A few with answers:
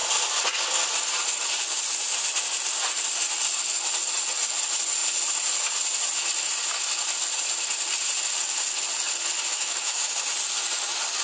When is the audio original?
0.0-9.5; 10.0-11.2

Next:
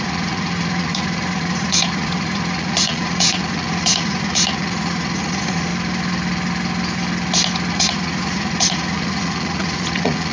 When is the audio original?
5.7-7.7

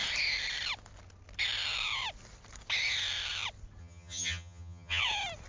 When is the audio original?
0.0-3.8; 5.0-5.5

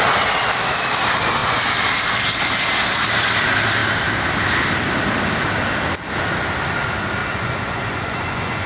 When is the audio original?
0.0-7.2

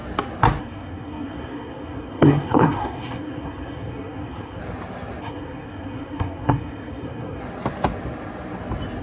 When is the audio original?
0.0-0.6; 4.6-5.2; 7.4-9.0

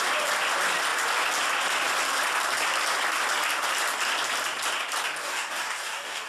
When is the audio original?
0.0-5.2

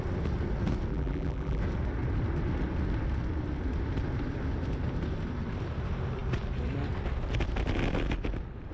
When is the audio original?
0.0-0.9; 1.6-8.7

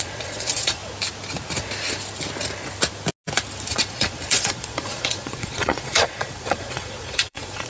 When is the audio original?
0.8-3.7